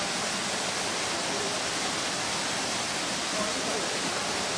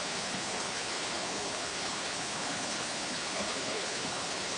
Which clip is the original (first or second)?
first